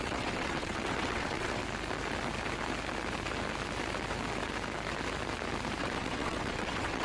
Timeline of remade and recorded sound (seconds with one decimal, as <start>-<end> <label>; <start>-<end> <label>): 0.0-1.6 remade; 1.6-5.8 recorded; 5.8-7.0 remade